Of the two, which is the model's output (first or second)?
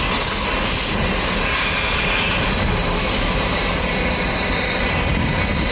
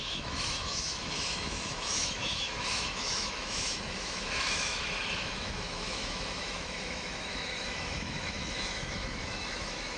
second